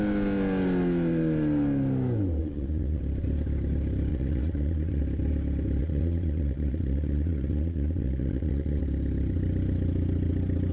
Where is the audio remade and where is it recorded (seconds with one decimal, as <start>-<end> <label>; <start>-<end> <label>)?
0.0-2.4 recorded; 2.4-3.0 remade; 3.0-4.1 recorded; 4.1-5.0 remade; 5.0-5.8 recorded; 5.8-8.8 remade; 8.8-10.7 recorded